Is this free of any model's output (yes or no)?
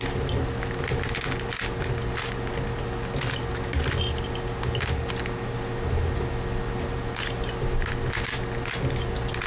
yes